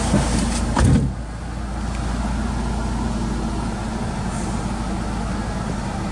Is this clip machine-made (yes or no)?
no